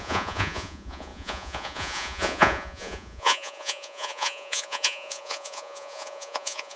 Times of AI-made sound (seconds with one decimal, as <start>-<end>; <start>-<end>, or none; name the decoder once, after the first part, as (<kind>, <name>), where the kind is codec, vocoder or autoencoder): 0.0-6.8 (vocoder, Vocos)